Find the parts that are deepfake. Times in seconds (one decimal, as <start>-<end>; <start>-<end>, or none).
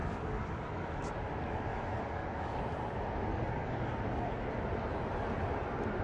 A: 0.0-1.1; 1.7-2.6; 3.3-4.4